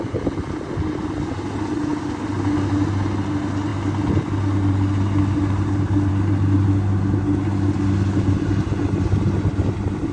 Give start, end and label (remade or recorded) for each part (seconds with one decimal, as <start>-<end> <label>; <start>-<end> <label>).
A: 0.0-10.1 recorded